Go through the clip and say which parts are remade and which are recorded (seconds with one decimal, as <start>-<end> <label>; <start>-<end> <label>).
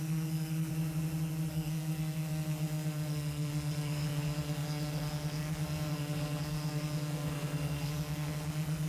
0.0-0.7 remade; 0.7-1.5 recorded; 1.5-8.9 remade